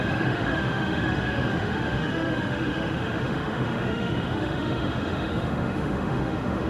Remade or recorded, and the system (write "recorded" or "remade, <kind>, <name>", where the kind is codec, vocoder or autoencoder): remade, autoencoder, DAC-VAE